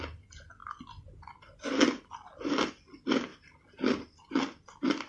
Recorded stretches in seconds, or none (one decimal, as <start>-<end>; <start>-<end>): 0.0-5.1